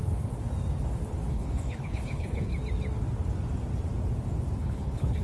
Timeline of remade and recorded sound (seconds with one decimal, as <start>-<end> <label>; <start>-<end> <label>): 0.0-1.3 recorded; 1.3-2.5 remade; 2.5-4.6 recorded; 4.6-5.2 remade